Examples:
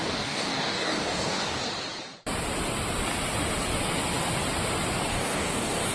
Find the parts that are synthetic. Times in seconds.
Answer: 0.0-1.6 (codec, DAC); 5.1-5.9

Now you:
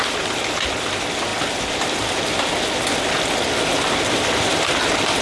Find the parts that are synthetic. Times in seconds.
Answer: none

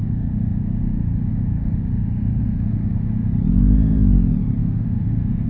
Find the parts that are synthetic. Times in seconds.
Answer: 0.0-3.3 (autoencoder, DAC-VAE); 4.6-5.5

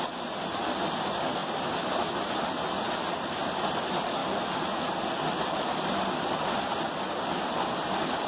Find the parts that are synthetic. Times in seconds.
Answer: none

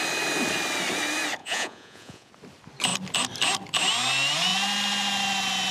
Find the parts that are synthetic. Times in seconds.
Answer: 1.4-2.3 (vocoder, Vocos)